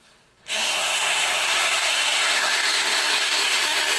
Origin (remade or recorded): remade